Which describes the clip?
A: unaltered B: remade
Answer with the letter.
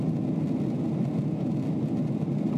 A